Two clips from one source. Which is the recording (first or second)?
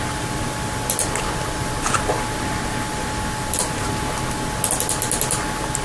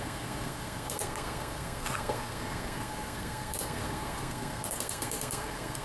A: first